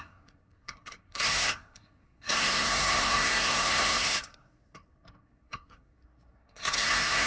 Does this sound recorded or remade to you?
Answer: remade